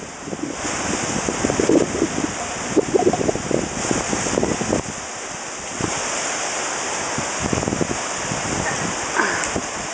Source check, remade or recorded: recorded